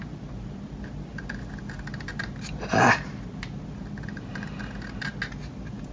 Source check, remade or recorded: recorded